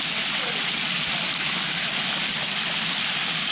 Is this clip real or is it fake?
real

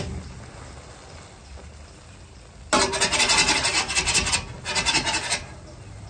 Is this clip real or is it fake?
real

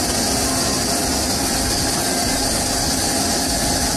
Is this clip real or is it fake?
real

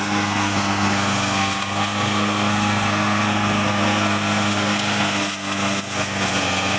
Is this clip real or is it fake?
fake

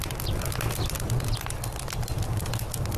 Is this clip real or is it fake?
real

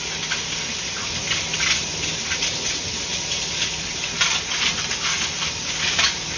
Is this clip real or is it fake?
real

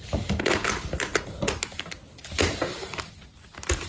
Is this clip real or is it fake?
real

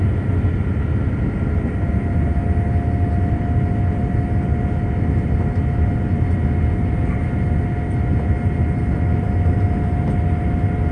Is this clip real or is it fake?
real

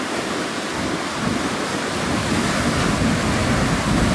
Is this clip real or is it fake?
real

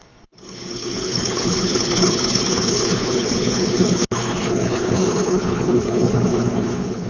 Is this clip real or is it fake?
fake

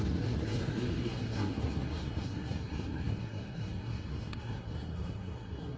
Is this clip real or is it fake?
fake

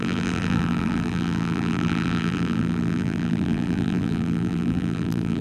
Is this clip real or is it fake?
fake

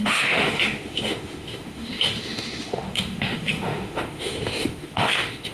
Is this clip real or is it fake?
fake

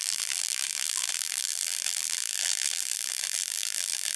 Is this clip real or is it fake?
fake